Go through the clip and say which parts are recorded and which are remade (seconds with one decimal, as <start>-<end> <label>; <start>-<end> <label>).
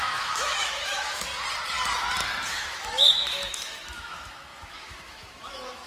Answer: 0.0-1.3 remade; 1.3-2.5 recorded; 2.5-5.9 remade